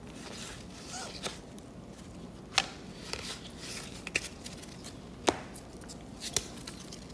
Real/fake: real